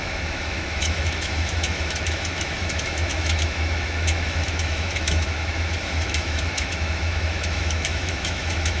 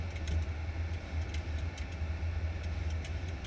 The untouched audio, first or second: second